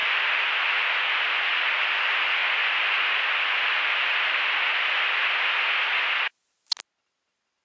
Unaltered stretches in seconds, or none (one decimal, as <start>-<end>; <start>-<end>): 0.0-1.8; 2.4-7.0